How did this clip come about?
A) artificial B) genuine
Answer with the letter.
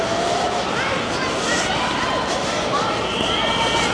B